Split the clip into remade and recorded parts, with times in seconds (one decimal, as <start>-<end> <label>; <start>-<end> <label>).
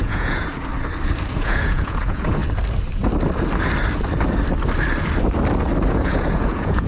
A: 0.0-0.7 remade; 0.7-1.3 recorded; 1.3-2.4 remade; 2.4-5.9 recorded; 5.9-6.9 remade